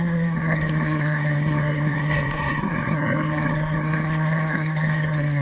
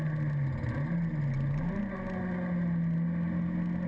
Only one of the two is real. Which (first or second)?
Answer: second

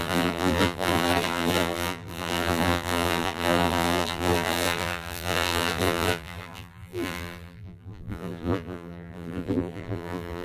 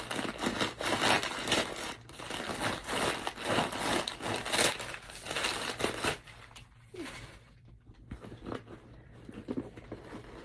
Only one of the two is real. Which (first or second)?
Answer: second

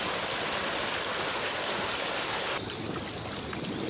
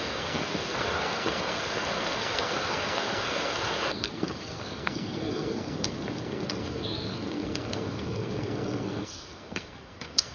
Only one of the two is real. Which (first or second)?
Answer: first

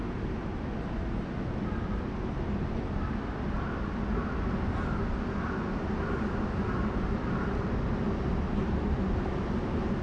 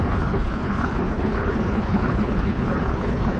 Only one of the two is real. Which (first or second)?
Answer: first